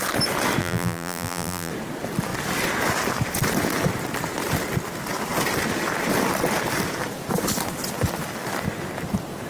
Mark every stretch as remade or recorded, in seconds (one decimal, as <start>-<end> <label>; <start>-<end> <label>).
0.0-0.6 recorded; 0.6-1.7 remade; 1.7-9.5 recorded